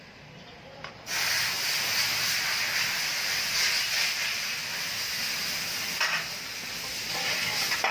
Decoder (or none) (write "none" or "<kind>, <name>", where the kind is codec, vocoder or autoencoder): none